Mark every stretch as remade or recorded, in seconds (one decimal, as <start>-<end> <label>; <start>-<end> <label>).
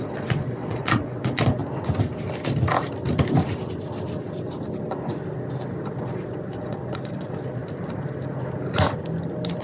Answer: 0.0-1.6 remade; 1.6-5.8 recorded; 5.8-7.6 remade; 7.6-9.6 recorded